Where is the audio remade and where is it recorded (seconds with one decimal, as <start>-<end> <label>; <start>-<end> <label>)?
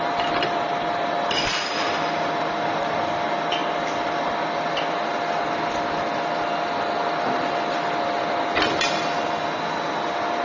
0.0-10.4 recorded